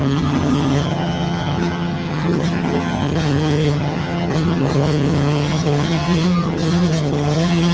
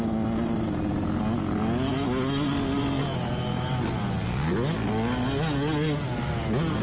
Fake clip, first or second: first